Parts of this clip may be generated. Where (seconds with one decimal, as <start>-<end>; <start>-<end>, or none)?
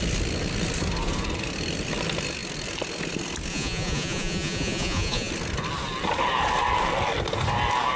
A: 3.5-5.3